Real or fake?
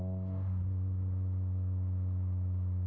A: real